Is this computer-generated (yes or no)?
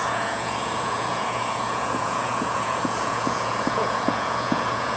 yes